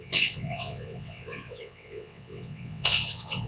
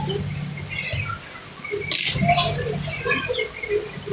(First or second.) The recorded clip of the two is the second